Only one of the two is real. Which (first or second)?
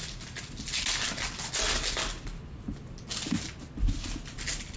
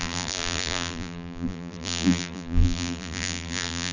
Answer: first